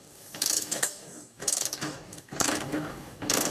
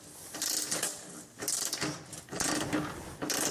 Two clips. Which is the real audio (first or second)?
second